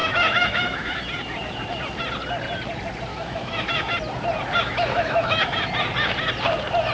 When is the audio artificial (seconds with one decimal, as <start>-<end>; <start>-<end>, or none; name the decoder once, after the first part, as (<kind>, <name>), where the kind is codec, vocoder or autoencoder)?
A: 0.0-1.0 (autoencoder, DAC-VAE); 3.1-3.9; 4.6-5.7